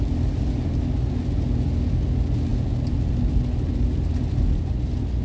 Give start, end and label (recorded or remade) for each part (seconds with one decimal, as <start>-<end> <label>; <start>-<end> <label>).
0.0-5.2 recorded